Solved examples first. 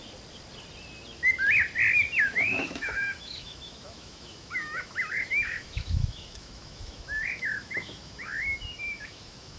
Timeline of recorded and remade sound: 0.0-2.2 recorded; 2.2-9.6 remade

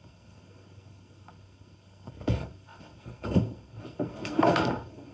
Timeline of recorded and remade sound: 0.0-5.1 remade

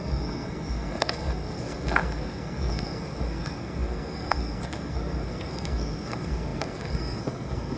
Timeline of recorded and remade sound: 0.0-7.8 remade

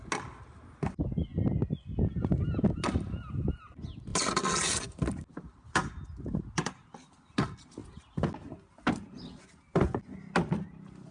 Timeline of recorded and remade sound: 0.0-11.1 recorded

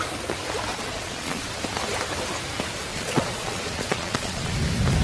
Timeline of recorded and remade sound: 0.0-0.7 recorded; 0.7-1.5 remade; 1.5-2.9 recorded; 2.9-4.5 remade; 4.5-5.0 recorded

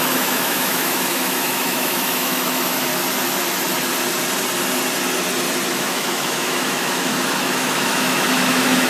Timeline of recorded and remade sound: 0.0-2.9 remade; 2.9-5.7 recorded; 5.7-8.9 remade

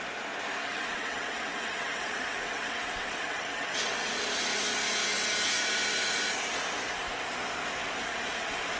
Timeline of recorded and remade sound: 0.0-0.6 recorded; 0.6-4.1 remade; 4.1-8.8 recorded